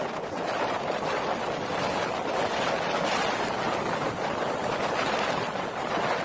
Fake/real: real